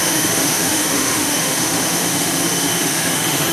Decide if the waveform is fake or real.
fake